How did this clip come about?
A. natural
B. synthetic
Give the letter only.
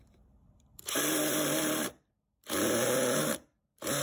B